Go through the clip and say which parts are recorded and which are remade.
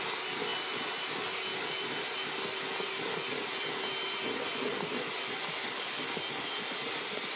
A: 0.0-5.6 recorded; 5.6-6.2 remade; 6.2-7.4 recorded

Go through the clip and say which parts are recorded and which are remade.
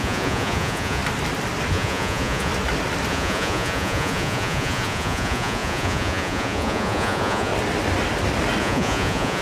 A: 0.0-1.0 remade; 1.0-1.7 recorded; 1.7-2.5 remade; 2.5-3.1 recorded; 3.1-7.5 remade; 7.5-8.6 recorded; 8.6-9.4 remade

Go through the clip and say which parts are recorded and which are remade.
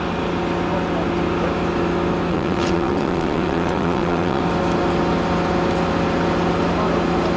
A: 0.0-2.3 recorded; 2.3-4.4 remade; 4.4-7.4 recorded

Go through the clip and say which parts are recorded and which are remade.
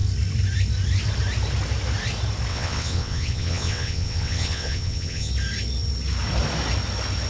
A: 0.0-2.5 recorded; 2.5-5.3 remade; 5.3-7.3 recorded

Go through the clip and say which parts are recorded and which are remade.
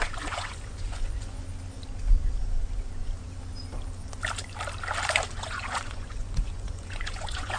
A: 0.0-1.4 remade; 1.4-5.2 recorded; 5.2-7.6 remade